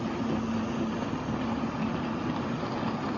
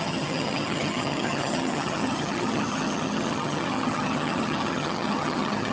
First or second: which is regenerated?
second